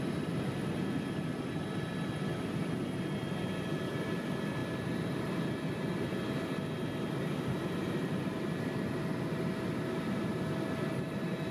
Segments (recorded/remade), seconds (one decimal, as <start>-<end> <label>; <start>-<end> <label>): 0.0-11.5 recorded